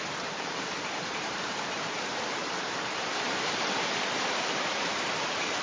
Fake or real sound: fake